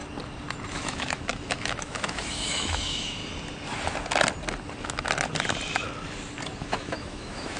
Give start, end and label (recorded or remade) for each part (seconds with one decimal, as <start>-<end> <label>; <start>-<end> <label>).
0.0-0.7 recorded; 0.7-3.2 remade; 3.2-6.6 recorded; 6.6-7.6 remade